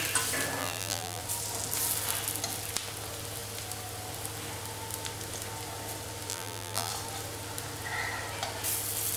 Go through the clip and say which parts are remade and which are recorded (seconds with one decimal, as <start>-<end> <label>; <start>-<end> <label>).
0.0-0.6 recorded; 0.6-1.2 remade; 1.2-6.3 recorded; 6.3-6.9 remade; 6.9-9.2 recorded